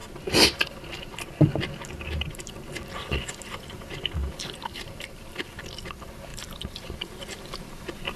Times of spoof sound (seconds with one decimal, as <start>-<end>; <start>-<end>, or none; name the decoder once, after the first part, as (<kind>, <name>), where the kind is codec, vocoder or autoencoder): 0.0-0.8 (vocoder, BigVGAN v2); 4.2-5.3; 6.3-8.2